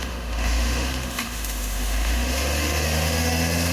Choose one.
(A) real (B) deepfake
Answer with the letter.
B